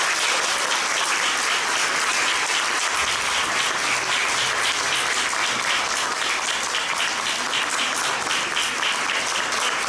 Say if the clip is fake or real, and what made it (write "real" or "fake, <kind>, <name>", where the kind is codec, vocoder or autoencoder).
real